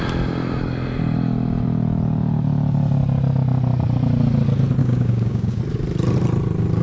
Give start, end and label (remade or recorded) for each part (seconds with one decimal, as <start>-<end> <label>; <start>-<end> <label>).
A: 0.0-4.8 recorded; 4.8-5.6 remade; 5.6-6.8 recorded